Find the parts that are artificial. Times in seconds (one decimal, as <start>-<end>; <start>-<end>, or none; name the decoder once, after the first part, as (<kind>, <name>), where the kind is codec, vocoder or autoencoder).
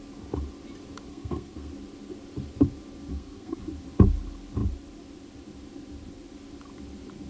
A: 1.1-1.7 (codec, SNAC); 3.1-3.6